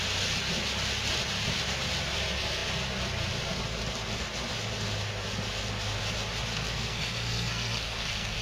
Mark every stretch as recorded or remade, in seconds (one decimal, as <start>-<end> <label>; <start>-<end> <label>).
0.0-6.5 recorded; 6.5-8.4 remade